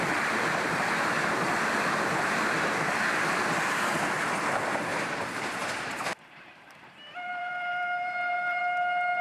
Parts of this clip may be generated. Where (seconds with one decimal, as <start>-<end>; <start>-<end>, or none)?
4.9-8.6